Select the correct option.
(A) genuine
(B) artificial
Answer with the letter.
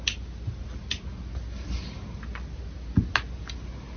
A